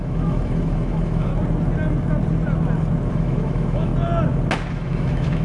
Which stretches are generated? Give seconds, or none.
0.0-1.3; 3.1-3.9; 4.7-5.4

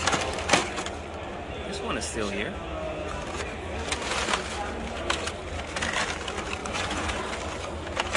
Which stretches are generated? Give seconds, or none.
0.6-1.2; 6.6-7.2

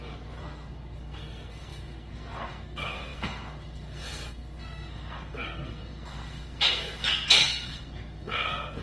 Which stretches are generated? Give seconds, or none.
0.0-8.8